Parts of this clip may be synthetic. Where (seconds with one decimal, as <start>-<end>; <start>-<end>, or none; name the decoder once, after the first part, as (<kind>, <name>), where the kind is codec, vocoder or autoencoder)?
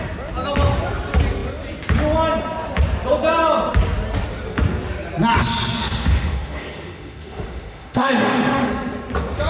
5.8-8.7 (autoencoder, DAC-VAE)